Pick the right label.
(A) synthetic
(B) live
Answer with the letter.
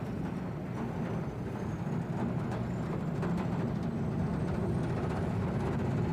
B